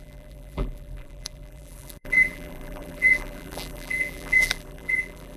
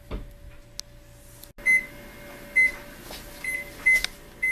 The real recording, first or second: second